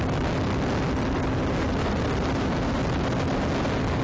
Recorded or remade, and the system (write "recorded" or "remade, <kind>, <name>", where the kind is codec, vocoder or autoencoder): recorded